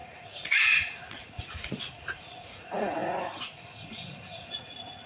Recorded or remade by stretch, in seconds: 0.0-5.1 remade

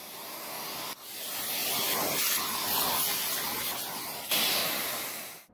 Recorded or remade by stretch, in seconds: 0.0-0.5 remade; 0.5-4.6 recorded; 4.6-5.5 remade

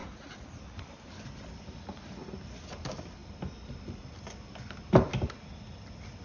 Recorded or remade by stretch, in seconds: 0.0-6.2 recorded

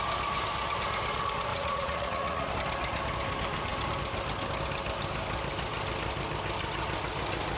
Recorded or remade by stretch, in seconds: 0.0-1.5 recorded; 1.5-2.5 remade; 2.5-7.6 recorded

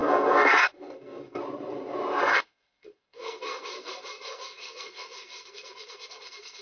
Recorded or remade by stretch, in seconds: 0.0-1.4 remade; 1.4-2.3 recorded; 2.3-6.6 remade